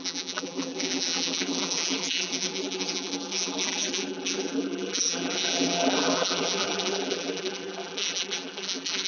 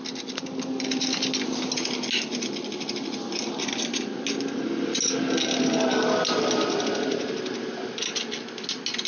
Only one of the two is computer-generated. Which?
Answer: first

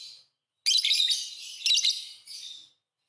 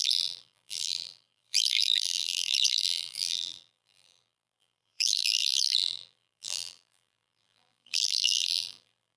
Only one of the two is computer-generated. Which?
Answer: second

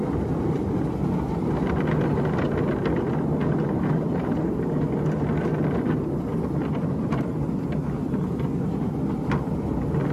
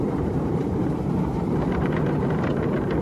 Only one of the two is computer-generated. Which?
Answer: second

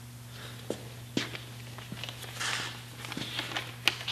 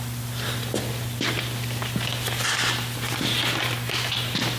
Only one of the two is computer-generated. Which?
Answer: second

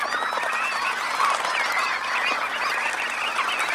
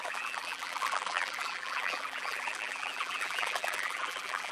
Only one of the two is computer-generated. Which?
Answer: second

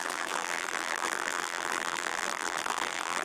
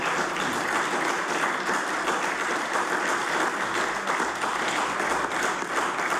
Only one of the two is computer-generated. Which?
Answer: first